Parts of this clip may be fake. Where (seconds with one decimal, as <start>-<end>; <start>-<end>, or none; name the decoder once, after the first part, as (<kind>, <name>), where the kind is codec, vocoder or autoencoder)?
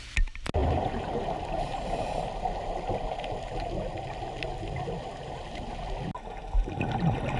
0.6-1.2 (vocoder, BigVGAN v2)